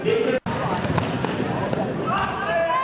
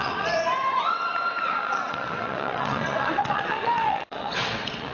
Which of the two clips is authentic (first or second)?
first